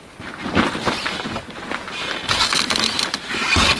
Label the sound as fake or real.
real